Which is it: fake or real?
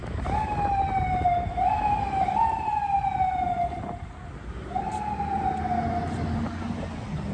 real